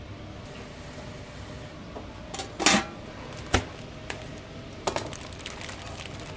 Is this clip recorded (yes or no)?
yes